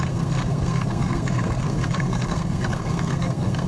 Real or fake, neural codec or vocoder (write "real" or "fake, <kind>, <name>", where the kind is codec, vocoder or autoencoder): fake, codec, SNAC